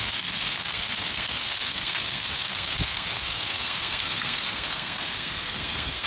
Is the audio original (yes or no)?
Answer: no